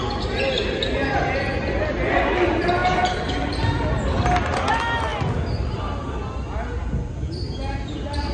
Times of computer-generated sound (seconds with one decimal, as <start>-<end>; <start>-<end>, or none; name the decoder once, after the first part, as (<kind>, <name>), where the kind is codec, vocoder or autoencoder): none

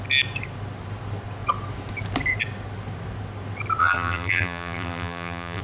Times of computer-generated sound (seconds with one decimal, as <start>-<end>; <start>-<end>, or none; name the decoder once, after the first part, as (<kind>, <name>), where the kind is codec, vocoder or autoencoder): 3.8-5.6 (vocoder, BigVGAN v2)

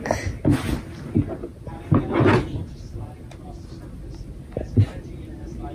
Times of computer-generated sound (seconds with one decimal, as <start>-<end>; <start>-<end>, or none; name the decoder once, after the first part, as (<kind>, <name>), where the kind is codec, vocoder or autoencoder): 1.5-3.4 (vocoder, BigVGAN v2)

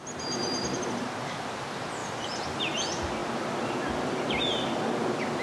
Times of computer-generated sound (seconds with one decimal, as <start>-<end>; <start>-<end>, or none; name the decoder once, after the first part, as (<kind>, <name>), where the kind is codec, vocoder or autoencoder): 2.0-2.6 (vocoder, BigVGAN v2)

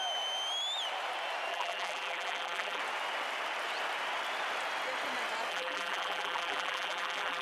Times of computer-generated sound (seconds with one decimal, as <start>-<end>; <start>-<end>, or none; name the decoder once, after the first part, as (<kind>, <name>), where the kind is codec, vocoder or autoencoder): 1.5-2.8 (vocoder, BigVGAN v2); 5.5-7.4

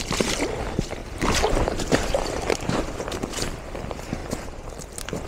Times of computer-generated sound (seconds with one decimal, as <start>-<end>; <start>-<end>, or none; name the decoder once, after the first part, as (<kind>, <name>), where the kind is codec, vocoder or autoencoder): 1.0-2.8 (vocoder, BigVGAN v2); 4.2-4.7

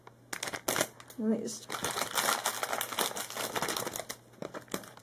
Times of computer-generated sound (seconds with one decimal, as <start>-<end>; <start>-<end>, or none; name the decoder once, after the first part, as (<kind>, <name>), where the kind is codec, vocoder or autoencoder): 4.4-5.0 (vocoder, BigVGAN v2)

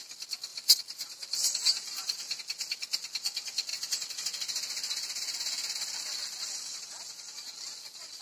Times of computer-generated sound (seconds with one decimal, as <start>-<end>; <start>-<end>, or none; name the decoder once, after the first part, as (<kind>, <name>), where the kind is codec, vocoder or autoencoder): 0.5-2.4 (vocoder, BigVGAN v2)